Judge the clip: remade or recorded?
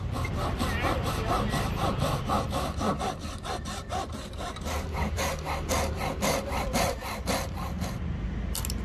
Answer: recorded